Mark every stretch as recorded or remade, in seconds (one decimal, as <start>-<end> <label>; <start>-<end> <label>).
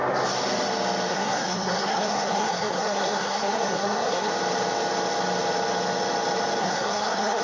0.0-1.1 recorded; 1.1-4.3 remade; 4.3-6.6 recorded; 6.6-7.4 remade